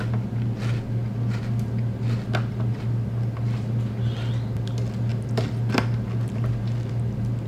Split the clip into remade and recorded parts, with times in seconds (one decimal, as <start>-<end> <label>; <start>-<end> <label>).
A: 0.0-7.5 recorded